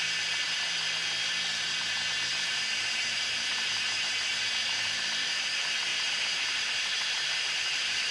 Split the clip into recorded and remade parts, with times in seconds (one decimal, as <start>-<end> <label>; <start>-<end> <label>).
0.0-2.3 recorded; 2.3-5.0 remade; 5.0-5.9 recorded; 5.9-8.1 remade